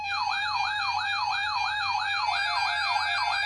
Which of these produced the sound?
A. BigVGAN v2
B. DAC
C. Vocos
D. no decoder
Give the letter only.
D